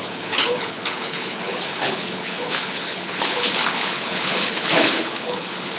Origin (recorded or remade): remade